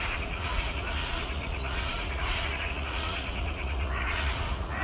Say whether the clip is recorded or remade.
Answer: remade